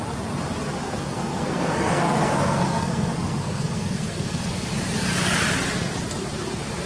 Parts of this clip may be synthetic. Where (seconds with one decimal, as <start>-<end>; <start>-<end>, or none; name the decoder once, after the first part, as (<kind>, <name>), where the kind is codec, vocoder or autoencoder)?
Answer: 0.8-4.5 (codec, SNAC)